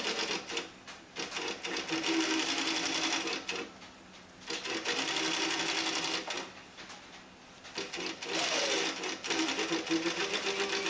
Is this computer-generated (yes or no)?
no